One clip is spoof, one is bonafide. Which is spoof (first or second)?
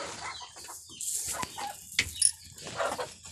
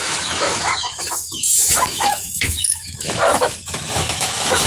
second